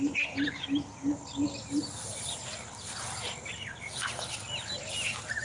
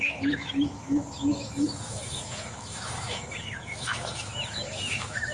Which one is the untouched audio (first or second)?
first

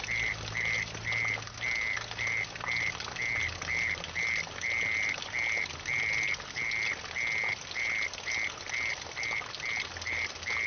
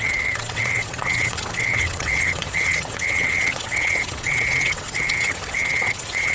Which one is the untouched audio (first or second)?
first